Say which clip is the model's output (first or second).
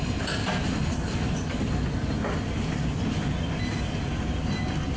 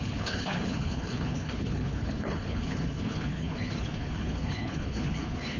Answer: second